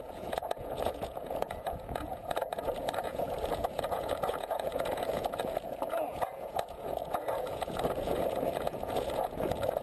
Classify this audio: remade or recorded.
remade